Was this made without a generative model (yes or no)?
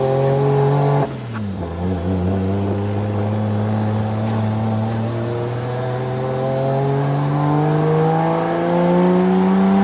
yes